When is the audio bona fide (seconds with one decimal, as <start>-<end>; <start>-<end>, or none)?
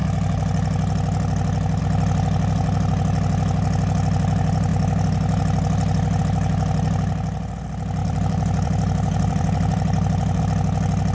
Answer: 0.0-8.0; 10.4-11.1